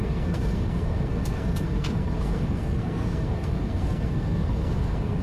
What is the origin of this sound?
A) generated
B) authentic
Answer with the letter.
A